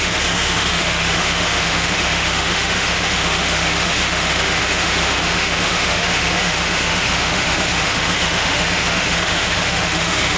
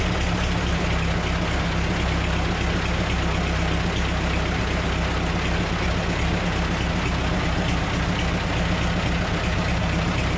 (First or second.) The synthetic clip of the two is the first